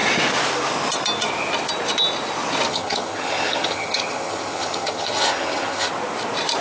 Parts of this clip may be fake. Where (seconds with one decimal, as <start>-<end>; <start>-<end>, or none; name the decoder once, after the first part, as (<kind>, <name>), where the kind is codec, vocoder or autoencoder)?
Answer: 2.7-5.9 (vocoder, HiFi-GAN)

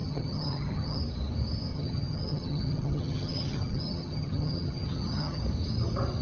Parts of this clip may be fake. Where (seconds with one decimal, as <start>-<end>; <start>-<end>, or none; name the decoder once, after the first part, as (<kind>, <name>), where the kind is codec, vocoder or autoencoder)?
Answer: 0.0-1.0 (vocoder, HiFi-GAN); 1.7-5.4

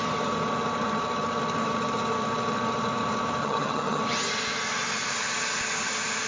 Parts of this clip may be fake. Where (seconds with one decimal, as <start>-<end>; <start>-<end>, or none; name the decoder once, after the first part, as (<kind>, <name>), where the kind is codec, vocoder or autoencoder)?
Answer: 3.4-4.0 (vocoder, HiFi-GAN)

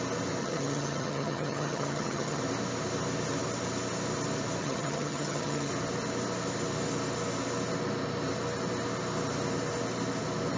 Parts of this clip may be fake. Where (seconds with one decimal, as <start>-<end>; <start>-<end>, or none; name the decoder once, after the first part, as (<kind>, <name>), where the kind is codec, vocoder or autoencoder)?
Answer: 0.4-2.4 (vocoder, HiFi-GAN); 4.6-5.7

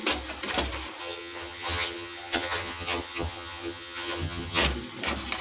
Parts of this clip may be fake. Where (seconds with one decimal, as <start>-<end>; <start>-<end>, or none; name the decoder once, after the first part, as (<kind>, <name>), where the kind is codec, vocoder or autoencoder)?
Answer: 1.0-4.6 (vocoder, HiFi-GAN)

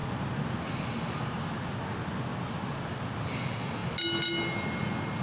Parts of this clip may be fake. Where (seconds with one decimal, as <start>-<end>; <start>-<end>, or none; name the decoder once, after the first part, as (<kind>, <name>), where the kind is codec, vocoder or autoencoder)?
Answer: none

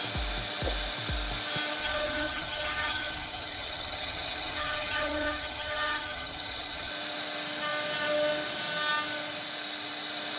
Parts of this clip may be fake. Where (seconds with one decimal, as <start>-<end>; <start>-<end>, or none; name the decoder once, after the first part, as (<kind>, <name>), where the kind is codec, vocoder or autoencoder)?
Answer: 1.8-6.9 (vocoder, HiFi-GAN)

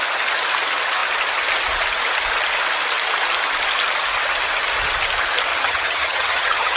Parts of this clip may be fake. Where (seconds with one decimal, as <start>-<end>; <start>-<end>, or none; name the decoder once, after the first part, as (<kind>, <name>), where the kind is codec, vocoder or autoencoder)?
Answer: 5.5-6.8 (vocoder, HiFi-GAN)